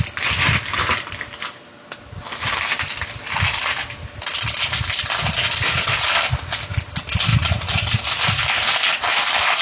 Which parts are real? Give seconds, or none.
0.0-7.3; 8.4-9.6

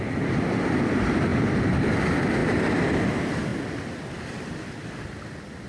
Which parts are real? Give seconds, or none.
0.0-2.4; 2.9-3.5; 4.3-5.7

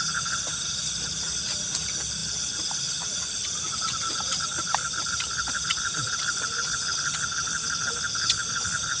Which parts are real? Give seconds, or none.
0.0-2.2; 5.2-9.0

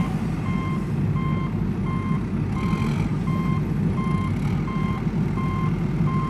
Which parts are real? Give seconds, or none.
0.0-6.3

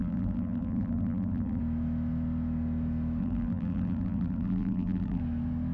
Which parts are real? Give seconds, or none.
1.6-3.2; 5.2-5.7